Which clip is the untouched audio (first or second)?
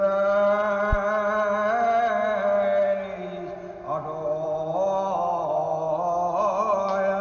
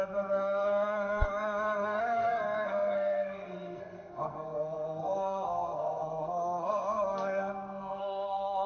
first